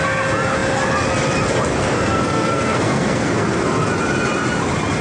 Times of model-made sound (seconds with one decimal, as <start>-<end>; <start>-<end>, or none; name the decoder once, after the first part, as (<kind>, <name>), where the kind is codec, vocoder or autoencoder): 1.7-3.9 (codec, SNAC)